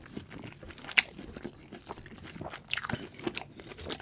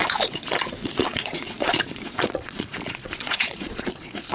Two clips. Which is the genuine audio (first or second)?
first